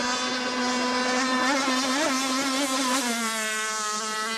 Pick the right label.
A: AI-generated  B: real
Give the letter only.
B